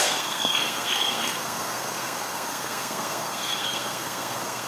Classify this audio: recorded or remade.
remade